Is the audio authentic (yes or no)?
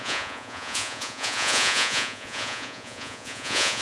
no